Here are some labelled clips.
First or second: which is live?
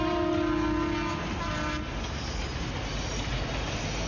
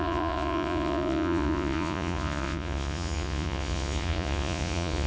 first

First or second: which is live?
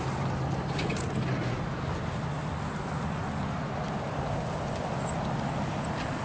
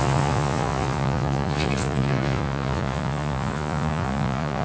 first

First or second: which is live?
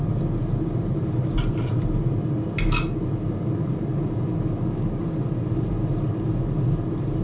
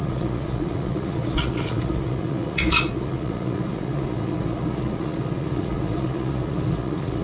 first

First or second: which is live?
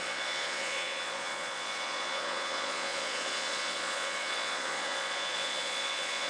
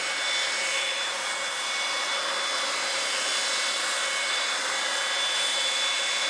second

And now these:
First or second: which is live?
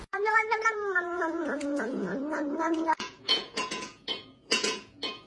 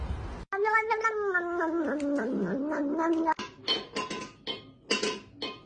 second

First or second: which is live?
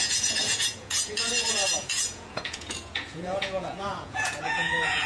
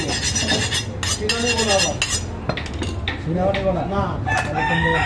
second